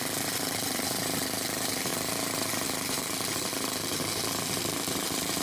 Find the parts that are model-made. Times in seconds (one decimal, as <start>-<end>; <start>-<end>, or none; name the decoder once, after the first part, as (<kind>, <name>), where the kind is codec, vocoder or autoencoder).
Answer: 0.0-5.4 (vocoder, BigVGAN v2)